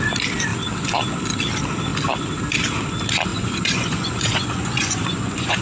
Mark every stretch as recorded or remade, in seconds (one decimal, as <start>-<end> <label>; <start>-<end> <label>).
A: 0.0-3.3 recorded; 3.3-5.6 remade